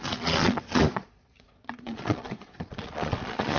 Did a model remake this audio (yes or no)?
yes